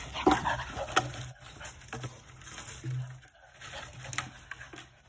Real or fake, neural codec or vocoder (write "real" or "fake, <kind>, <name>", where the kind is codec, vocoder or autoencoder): real